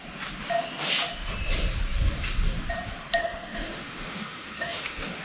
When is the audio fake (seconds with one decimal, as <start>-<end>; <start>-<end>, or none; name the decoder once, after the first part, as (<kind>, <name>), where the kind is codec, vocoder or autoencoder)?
3.2-5.2 (autoencoder, DAC-VAE)